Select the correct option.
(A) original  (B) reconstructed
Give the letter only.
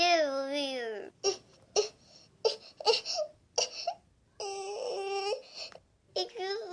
A